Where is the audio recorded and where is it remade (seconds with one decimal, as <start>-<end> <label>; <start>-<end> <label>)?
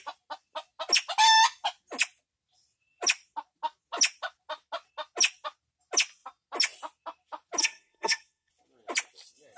0.0-7.6 recorded; 7.6-8.5 remade; 8.5-9.6 recorded